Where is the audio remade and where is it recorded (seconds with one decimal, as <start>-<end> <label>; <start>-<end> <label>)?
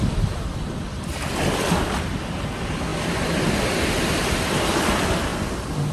0.0-1.1 recorded; 1.1-2.1 remade; 2.1-5.9 recorded